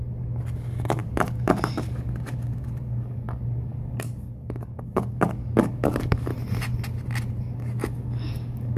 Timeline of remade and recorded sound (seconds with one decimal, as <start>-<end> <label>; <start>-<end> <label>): 0.0-6.3 remade; 6.3-7.3 recorded; 7.3-8.8 remade